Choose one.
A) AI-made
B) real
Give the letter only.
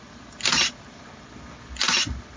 B